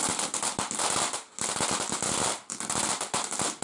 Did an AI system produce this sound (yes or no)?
no